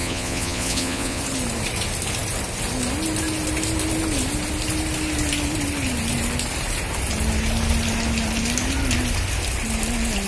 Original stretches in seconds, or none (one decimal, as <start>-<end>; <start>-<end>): 1.2-10.3